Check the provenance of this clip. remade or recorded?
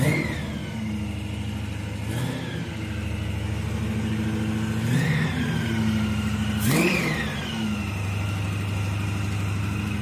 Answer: recorded